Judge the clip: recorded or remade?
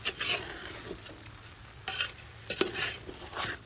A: remade